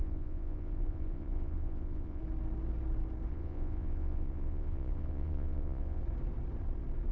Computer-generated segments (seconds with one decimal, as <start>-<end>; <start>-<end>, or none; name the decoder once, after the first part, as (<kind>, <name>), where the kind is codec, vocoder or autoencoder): 0.0-2.2 (vocoder, Vocos); 3.3-6.0